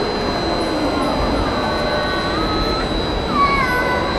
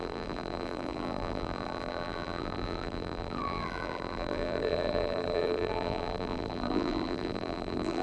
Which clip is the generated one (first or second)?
second